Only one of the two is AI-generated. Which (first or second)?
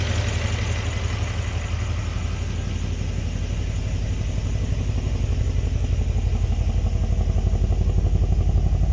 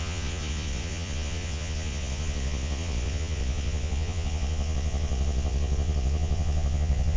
second